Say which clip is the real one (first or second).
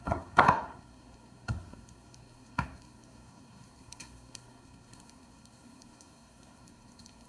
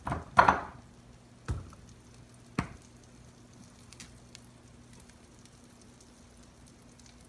second